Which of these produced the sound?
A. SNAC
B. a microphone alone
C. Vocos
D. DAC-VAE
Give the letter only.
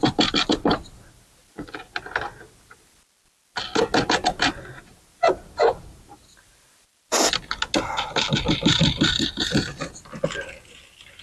B